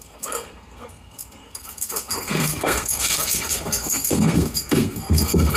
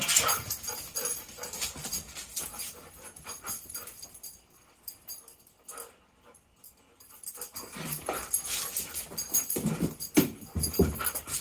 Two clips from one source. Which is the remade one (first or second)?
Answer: first